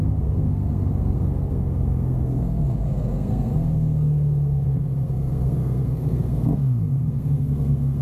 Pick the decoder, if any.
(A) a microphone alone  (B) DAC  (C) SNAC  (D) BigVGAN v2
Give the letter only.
C